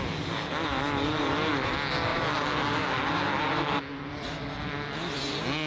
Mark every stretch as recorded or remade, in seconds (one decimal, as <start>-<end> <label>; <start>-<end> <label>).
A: 0.0-5.7 recorded